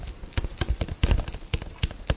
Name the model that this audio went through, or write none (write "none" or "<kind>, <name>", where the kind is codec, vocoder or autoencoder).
none